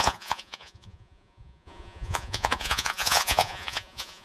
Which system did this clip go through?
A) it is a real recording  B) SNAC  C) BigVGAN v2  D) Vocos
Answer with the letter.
D